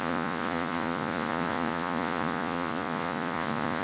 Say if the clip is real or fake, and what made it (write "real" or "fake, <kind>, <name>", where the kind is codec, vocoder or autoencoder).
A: fake, vocoder, Vocos